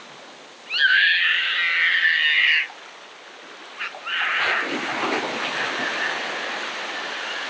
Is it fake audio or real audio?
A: real